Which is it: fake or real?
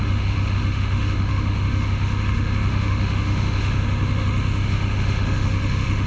fake